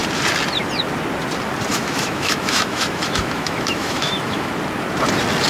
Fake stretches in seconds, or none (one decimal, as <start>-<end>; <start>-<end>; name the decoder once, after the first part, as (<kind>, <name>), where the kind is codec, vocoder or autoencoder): 1.7-4.5 (autoencoder, DAC-VAE)